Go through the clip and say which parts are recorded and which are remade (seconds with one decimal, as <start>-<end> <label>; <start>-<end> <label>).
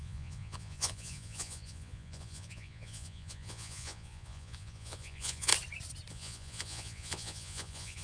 0.0-5.5 remade; 5.5-6.1 recorded; 6.1-8.0 remade